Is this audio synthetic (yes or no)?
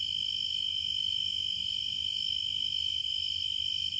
no